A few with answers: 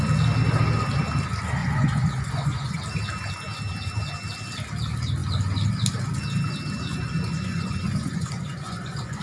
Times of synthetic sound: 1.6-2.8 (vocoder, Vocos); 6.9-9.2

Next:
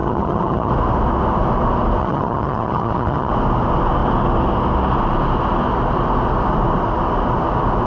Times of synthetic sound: 0.0-0.7 (vocoder, HiFi-GAN); 2.0-3.3